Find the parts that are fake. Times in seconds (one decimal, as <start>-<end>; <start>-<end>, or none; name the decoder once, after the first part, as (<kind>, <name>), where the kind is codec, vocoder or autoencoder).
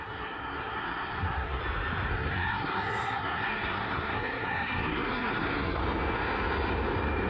0.0-1.6 (codec, SNAC); 2.1-5.8